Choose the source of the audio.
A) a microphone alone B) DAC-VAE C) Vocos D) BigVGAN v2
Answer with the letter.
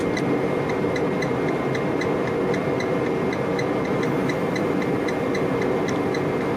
A